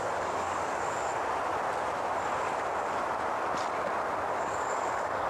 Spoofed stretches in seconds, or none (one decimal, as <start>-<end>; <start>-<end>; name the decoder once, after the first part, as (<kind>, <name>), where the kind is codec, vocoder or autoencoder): 0.0-1.1 (codec, DAC); 4.3-5.3